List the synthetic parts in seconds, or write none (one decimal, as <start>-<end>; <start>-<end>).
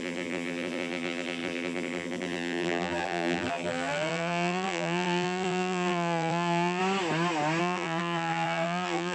0.0-6.8; 7.6-9.1